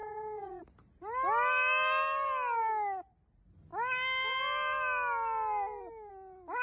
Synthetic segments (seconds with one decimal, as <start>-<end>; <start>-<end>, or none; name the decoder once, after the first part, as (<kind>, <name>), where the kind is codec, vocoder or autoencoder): 0.0-0.6 (vocoder, Vocos)